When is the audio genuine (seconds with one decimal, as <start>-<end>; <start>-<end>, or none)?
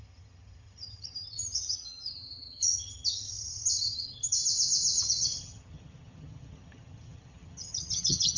4.4-5.0